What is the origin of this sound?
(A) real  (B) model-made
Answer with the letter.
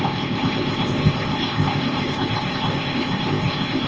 B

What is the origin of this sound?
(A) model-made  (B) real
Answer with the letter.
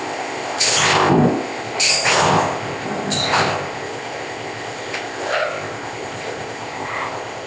A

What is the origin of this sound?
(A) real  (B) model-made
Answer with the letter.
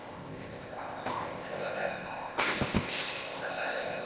B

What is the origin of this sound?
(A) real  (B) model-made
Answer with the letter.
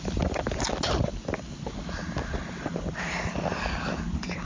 A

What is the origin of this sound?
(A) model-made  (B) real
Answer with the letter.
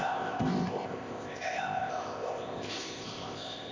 A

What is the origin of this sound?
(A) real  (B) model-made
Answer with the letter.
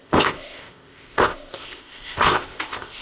B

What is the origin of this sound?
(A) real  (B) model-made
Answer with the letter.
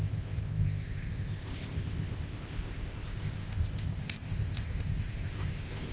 B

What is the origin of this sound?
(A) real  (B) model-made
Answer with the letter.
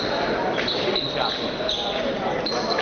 A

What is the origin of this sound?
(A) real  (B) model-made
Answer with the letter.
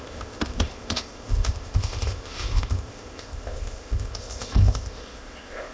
B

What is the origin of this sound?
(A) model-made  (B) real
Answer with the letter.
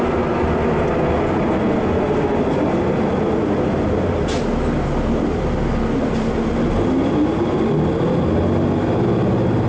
B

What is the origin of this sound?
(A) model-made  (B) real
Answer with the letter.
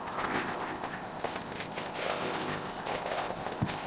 A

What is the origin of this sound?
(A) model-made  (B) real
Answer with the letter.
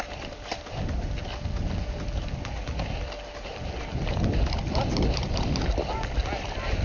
B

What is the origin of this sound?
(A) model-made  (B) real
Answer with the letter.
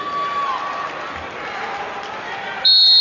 B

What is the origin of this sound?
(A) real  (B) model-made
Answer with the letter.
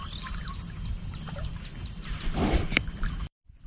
A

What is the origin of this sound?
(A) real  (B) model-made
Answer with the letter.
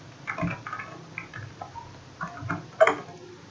A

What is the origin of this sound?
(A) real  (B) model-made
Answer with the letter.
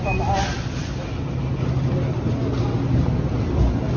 A